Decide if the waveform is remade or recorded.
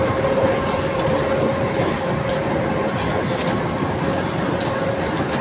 recorded